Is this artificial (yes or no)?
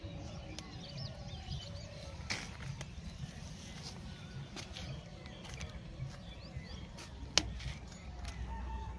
no